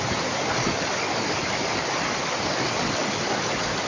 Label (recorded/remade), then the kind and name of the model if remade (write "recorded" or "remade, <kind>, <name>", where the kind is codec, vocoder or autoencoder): recorded